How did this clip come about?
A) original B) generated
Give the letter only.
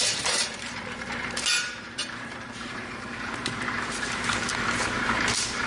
B